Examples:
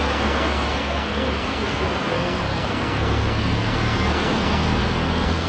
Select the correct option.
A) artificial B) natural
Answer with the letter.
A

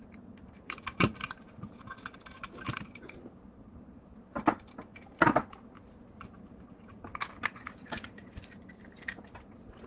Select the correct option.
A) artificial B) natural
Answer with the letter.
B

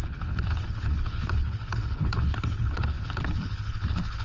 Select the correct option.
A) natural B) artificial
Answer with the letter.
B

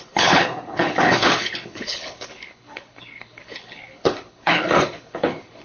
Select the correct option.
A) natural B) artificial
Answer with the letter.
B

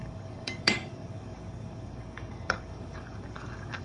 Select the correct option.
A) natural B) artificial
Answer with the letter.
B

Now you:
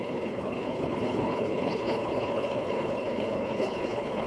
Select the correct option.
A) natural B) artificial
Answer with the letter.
B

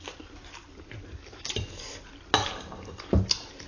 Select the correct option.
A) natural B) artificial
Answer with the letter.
A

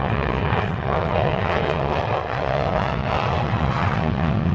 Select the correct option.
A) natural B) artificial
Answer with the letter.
B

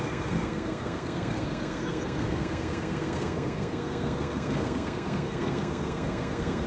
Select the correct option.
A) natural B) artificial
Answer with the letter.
B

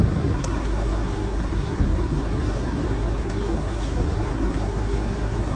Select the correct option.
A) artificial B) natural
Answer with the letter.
A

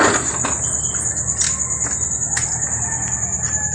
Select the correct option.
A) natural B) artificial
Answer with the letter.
A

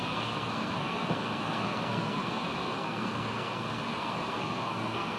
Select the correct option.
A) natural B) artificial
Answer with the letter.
B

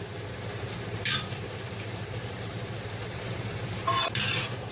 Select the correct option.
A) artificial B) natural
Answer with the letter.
A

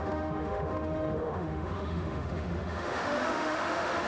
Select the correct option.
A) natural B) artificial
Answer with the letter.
B